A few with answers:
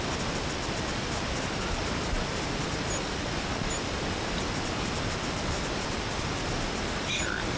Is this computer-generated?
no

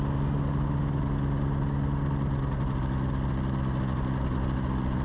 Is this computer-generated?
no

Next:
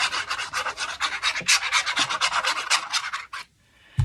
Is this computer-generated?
no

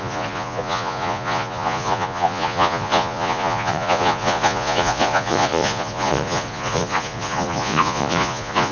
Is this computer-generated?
yes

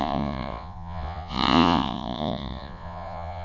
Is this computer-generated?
yes